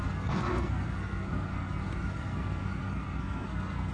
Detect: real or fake fake